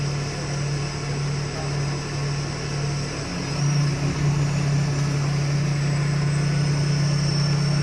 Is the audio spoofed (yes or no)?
no